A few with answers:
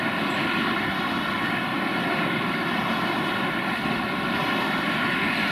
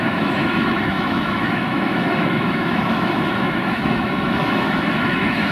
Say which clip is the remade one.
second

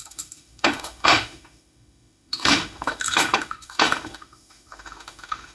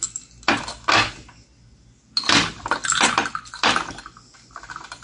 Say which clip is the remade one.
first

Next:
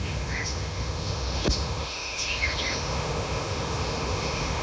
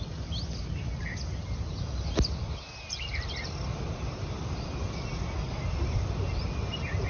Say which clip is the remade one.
first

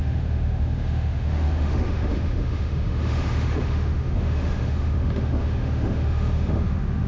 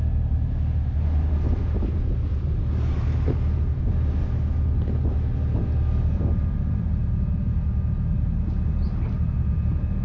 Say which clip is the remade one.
first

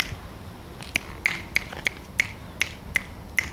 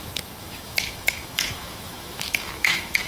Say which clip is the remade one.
second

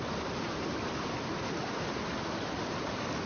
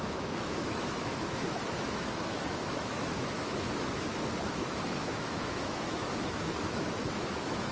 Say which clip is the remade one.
second